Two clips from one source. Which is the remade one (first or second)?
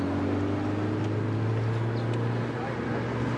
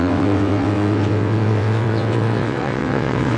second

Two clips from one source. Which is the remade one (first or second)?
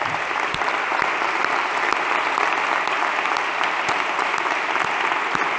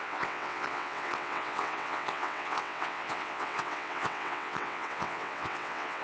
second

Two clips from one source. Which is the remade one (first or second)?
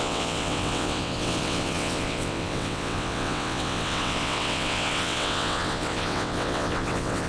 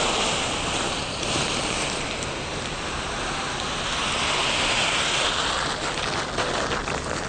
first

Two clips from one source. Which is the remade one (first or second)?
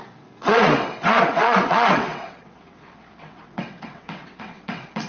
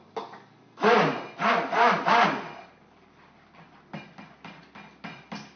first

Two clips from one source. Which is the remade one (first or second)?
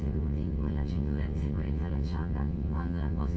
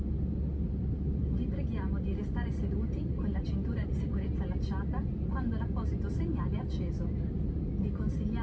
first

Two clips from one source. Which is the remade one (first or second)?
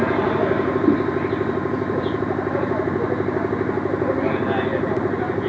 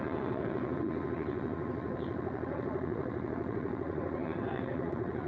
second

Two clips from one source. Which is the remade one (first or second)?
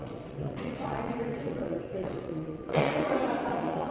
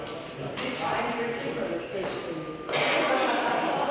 first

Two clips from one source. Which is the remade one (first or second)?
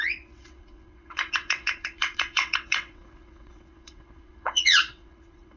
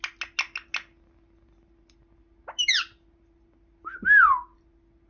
first